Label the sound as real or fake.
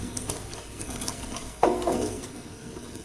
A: fake